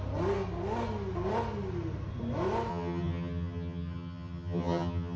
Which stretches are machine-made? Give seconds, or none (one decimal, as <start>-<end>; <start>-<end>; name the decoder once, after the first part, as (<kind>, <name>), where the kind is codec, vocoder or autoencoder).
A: 2.7-5.2 (vocoder, HiFi-GAN)